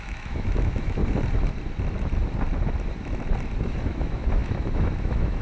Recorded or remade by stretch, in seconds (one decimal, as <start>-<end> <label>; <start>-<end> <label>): 0.0-1.0 remade; 1.0-3.6 recorded; 3.6-5.4 remade